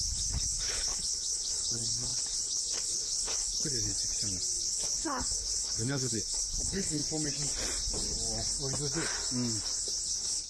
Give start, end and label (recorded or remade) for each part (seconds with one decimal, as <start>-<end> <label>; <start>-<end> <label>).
0.0-3.9 remade; 3.9-4.6 recorded; 4.6-7.0 remade; 7.0-10.1 recorded; 10.1-10.5 remade